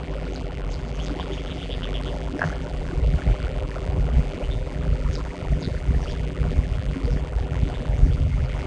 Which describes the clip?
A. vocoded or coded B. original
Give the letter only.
A